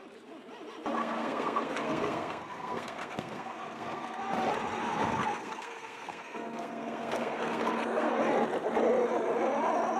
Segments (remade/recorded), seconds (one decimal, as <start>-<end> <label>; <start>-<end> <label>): 0.0-1.0 recorded; 1.0-4.2 remade; 4.2-4.8 recorded; 4.8-8.2 remade; 8.2-10.0 recorded